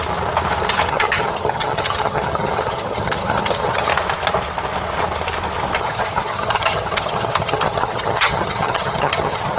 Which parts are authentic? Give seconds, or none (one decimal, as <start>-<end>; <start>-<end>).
0.0-0.9; 3.9-5.8